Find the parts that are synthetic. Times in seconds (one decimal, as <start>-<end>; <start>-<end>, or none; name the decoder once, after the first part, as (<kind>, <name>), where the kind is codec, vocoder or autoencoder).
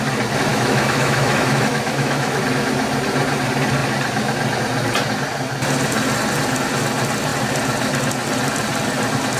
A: 0.5-2.4 (autoencoder, DAC-VAE)